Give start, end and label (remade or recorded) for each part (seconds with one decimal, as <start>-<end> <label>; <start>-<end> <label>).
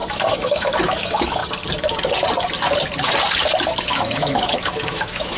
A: 0.0-1.4 remade; 1.4-3.8 recorded; 3.8-5.4 remade